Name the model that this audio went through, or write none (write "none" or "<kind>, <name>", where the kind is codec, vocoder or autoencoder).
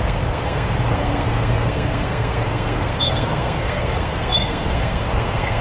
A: codec, SNAC